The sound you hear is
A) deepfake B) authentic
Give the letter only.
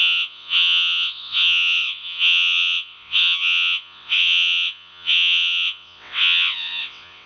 A